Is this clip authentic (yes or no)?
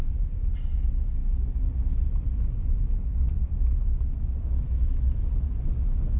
yes